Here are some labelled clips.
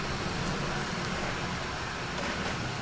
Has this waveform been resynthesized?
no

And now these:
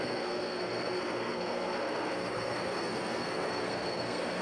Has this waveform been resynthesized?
yes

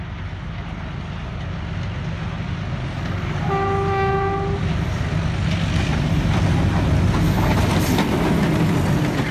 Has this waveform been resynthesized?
no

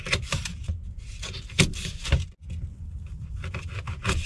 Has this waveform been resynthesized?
no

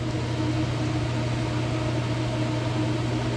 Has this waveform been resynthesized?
no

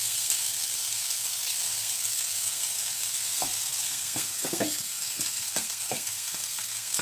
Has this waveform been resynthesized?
yes